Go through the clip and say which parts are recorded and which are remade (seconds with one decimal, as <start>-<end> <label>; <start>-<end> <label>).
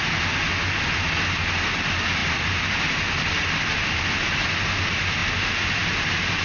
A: 0.0-6.4 recorded